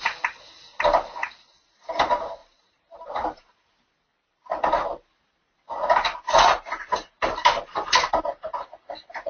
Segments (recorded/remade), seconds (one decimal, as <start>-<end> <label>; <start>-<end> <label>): 0.0-2.4 recorded; 2.4-3.4 remade; 3.4-9.3 recorded